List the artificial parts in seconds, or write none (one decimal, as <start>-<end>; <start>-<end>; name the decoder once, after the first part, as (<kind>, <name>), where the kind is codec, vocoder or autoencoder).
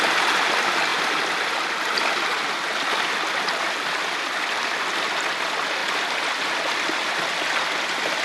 none